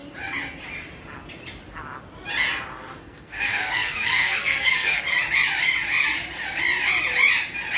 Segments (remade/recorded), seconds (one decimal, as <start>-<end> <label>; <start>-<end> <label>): 0.0-3.0 recorded; 3.0-5.0 remade; 5.0-7.8 recorded